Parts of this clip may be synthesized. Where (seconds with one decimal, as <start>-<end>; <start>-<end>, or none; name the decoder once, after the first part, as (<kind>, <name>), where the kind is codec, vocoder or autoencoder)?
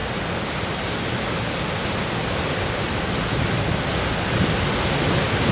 none